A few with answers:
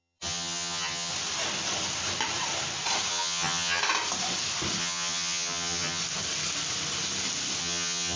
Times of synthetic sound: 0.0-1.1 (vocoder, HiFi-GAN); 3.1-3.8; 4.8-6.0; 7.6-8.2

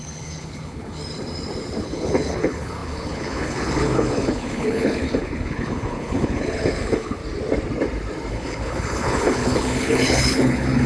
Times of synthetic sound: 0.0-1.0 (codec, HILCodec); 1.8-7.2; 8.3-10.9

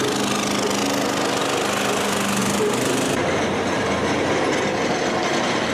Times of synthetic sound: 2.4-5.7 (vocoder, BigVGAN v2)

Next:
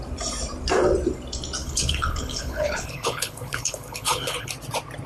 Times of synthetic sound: 1.6-4.5 (codec, HILCodec)

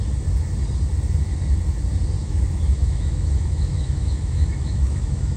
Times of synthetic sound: 2.2-5.4 (autoencoder, DAC-VAE)

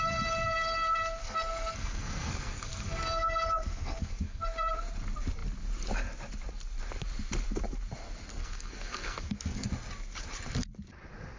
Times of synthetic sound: 1.2-4.4 (codec, SNAC); 8.3-9.7

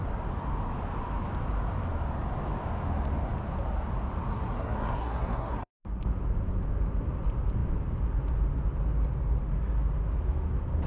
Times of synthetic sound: 4.3-5.7 (codec, SNAC)

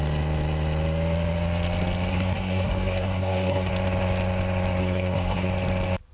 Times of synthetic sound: 2.1-3.7 (codec, SNAC); 4.8-5.5